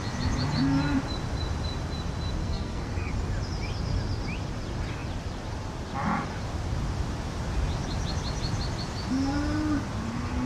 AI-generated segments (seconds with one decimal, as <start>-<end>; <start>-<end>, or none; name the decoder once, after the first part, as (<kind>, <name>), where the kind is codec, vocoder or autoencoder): 2.4-3.1 (codec, SNAC)